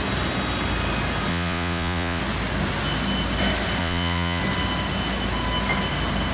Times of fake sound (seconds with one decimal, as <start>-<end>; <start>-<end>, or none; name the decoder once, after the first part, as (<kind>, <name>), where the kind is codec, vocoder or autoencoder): 1.3-2.2 (vocoder, Vocos); 3.8-4.4